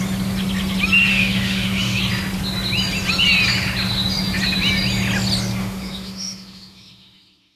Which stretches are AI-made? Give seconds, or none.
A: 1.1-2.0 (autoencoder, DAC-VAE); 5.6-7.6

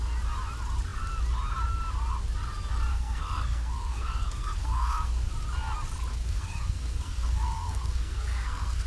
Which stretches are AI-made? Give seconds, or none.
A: 2.9-5.3 (codec, SNAC); 6.1-8.9

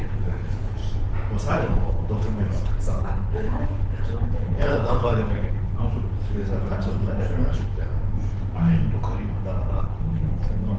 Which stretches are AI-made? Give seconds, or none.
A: 0.0-0.8 (codec, HILCodec); 1.5-5.8; 7.5-7.9; 9.7-10.8

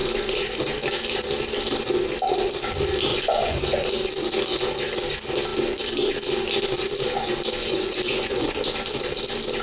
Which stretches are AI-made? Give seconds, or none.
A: 3.1-3.9 (vocoder, Vocos); 7.6-8.5

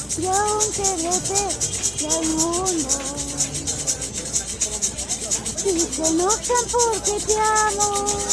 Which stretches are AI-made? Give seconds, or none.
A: none

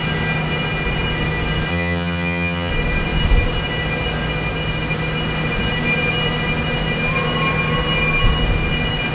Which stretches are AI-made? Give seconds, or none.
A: 1.7-2.7 (vocoder, HiFi-GAN)

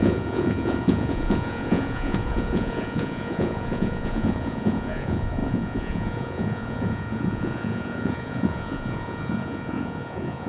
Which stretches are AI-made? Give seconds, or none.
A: 0.0-10.5 (vocoder, Vocos)

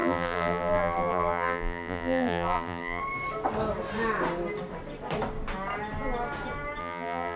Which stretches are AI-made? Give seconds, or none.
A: 0.0-3.0 (vocoder, BigVGAN v2); 6.8-7.4